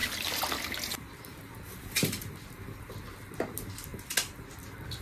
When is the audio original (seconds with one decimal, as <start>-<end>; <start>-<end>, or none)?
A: 0.0-5.0